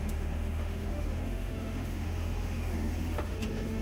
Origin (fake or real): fake